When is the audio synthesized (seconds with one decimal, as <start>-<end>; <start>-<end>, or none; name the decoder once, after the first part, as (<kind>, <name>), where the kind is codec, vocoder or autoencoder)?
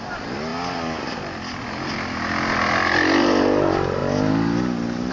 none